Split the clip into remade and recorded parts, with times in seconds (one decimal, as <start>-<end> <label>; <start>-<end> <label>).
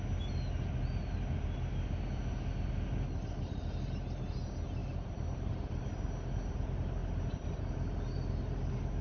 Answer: 0.0-9.0 recorded